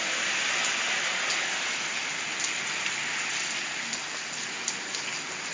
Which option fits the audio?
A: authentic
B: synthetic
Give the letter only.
A